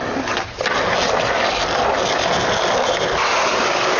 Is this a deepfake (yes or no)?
no